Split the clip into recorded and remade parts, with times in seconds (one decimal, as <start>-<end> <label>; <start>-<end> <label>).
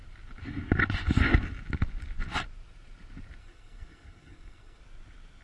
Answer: 0.0-3.4 recorded; 3.4-4.8 remade; 4.8-5.4 recorded